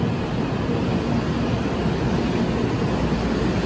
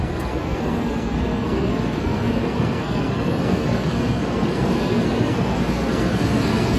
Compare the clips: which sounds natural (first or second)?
first